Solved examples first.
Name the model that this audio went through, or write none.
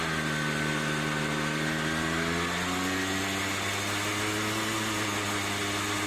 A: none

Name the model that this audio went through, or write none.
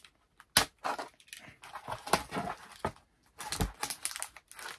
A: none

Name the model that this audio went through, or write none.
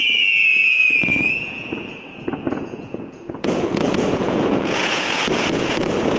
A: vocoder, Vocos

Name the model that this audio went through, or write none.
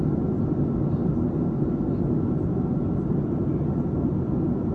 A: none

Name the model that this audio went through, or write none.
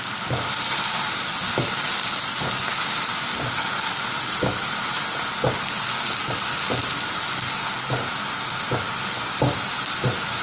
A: none